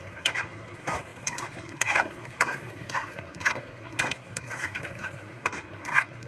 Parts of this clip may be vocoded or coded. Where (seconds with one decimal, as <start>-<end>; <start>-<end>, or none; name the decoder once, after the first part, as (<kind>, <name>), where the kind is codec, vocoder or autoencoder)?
0.0-6.3 (codec, SNAC)